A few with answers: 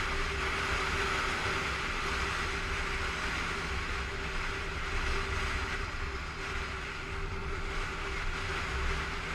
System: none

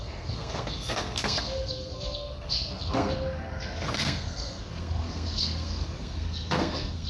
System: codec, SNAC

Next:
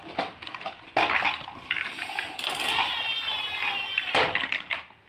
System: none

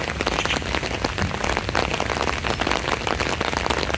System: none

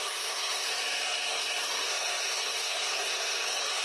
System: codec, SNAC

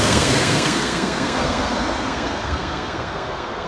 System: codec, SNAC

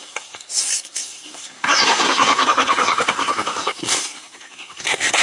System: codec, SNAC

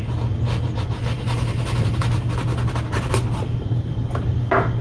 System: none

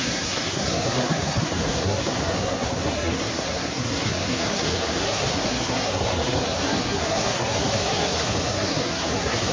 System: codec, SNAC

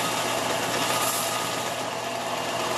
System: none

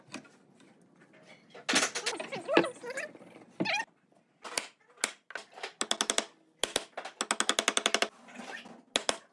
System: none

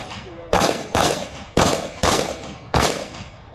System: codec, SNAC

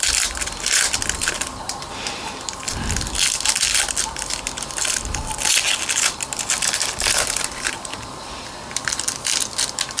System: none